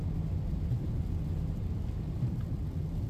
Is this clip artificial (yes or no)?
no